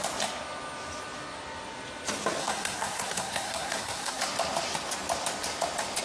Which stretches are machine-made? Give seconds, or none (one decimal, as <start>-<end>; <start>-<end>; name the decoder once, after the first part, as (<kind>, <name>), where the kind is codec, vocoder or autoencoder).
2.4-4.2 (codec, SNAC)